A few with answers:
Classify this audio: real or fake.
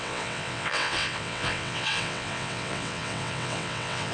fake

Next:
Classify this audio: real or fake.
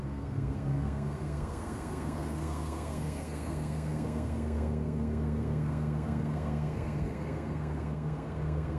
fake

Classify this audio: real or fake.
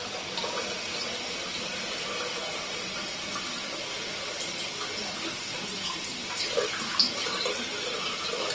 real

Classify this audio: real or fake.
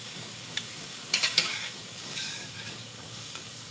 fake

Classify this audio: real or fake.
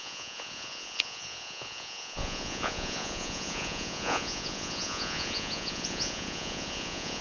fake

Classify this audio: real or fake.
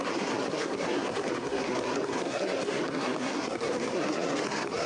fake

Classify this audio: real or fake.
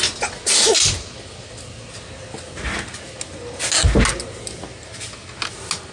real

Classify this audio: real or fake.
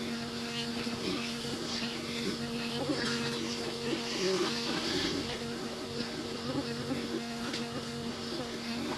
fake